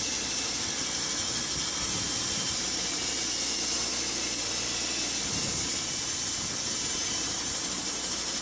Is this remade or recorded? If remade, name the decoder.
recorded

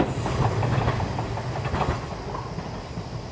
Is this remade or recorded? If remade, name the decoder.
recorded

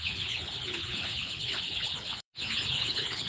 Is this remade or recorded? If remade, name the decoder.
remade, codec, HILCodec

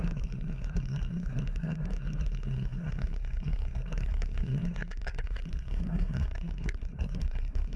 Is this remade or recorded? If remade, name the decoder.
remade, codec, SNAC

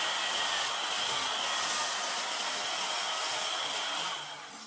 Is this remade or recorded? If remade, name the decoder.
recorded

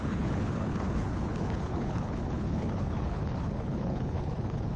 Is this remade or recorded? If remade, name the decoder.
remade, codec, HILCodec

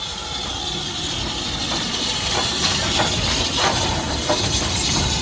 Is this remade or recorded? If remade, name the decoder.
recorded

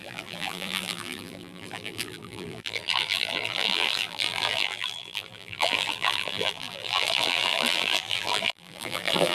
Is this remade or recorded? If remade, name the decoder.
remade, vocoder, BigVGAN v2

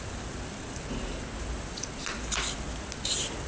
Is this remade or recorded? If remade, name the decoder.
recorded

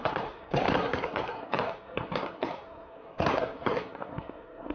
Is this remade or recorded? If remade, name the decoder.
remade, codec, SNAC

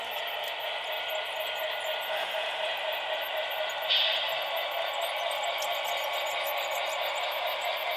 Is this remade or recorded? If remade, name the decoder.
recorded